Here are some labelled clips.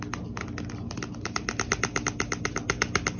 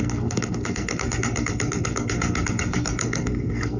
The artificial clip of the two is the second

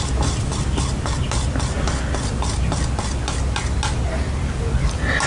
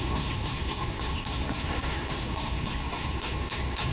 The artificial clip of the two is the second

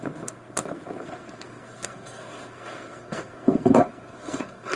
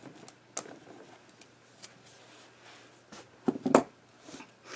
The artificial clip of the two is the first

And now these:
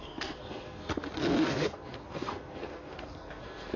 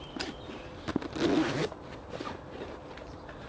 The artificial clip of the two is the first